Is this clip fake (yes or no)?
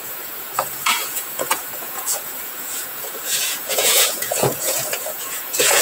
yes